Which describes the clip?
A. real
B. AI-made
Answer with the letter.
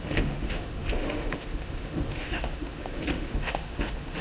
B